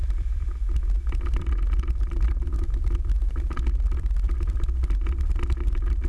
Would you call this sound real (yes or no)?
no